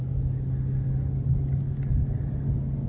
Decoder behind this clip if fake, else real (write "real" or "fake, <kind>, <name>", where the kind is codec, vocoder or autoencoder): real